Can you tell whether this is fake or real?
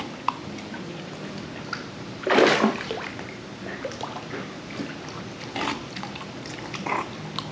real